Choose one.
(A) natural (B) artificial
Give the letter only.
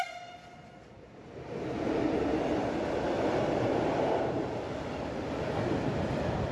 A